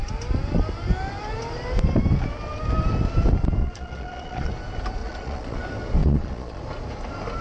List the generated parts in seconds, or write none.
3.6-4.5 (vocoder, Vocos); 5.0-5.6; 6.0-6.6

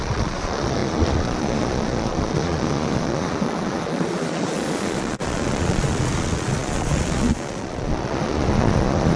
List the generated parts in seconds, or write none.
0.0-9.2 (vocoder, Vocos)

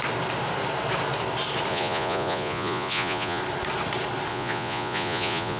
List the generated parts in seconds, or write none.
1.7-3.4 (vocoder, Vocos); 4.3-5.6

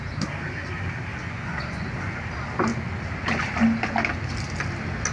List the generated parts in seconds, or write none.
1.1-2.2 (vocoder, Vocos)